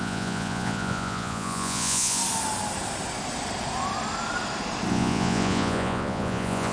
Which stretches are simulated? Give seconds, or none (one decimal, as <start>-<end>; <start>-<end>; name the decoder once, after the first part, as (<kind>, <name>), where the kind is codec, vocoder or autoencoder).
0.0-2.2 (vocoder, Vocos); 4.9-6.7